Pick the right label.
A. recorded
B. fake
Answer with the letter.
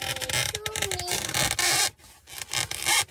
A